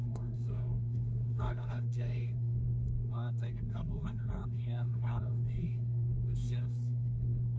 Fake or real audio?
fake